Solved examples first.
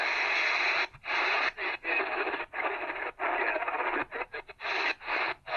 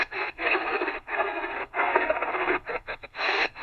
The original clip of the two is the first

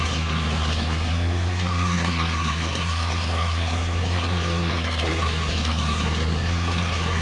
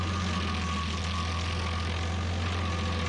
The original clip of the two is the second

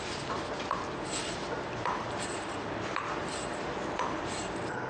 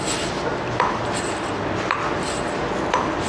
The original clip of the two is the second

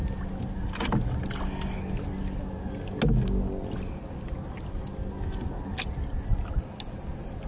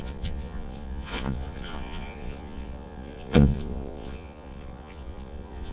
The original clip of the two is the first